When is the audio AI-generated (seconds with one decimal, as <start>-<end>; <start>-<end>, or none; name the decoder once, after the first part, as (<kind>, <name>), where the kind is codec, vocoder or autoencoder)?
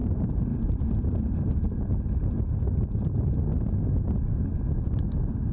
0.0-3.3 (vocoder, BigVGAN v2)